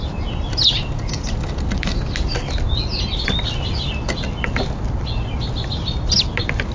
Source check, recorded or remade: recorded